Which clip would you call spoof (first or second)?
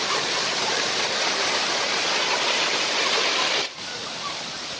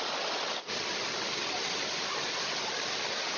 first